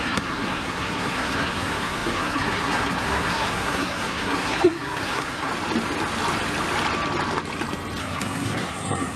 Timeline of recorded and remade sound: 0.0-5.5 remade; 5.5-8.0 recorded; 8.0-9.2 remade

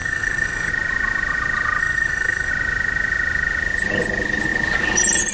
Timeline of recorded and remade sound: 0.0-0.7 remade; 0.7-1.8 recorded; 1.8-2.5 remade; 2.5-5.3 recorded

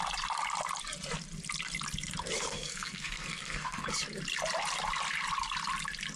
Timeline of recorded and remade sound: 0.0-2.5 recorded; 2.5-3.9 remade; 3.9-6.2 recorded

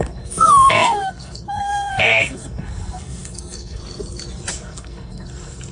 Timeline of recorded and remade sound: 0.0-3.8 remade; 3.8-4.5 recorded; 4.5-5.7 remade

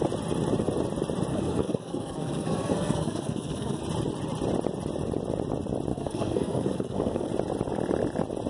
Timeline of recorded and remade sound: 0.0-1.3 recorded; 1.3-3.8 remade; 3.8-5.9 recorded; 5.9-7.3 remade; 7.3-8.5 recorded